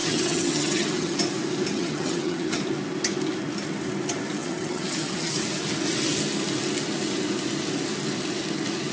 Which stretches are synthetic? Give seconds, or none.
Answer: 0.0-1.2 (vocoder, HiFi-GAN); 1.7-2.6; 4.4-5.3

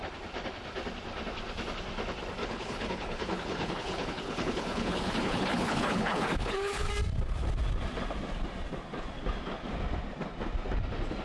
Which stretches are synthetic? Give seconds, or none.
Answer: 2.4-6.9 (codec, HILCodec)